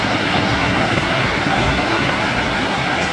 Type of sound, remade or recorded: remade